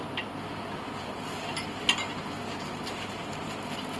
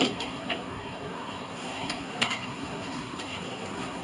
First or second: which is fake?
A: second